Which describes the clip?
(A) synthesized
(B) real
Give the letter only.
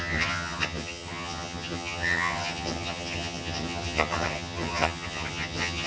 A